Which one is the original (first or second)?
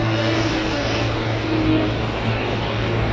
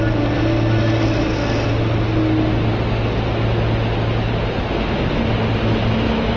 second